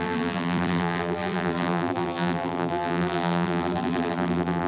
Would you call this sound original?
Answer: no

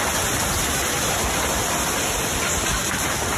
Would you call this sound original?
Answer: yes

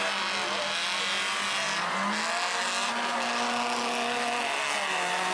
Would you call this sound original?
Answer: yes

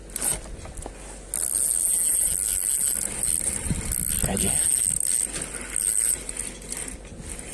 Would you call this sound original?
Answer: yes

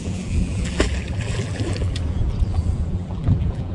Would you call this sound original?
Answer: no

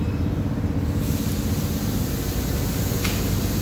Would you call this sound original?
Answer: yes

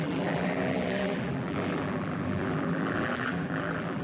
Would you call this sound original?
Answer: no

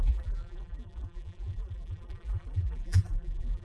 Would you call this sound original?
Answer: no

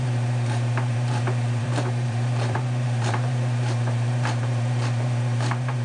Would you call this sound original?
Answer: no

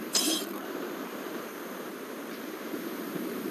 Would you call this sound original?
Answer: no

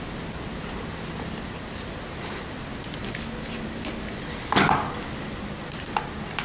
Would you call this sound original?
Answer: yes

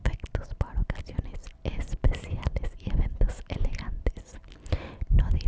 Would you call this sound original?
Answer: yes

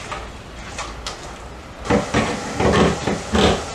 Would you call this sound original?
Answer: yes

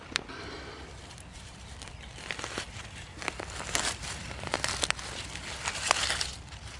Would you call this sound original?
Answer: no